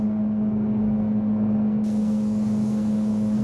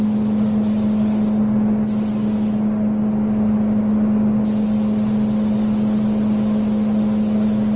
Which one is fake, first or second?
first